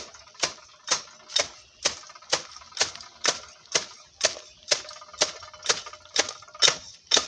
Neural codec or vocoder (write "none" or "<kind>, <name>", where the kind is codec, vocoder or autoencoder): none